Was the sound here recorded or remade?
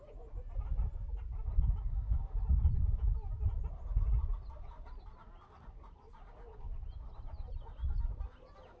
recorded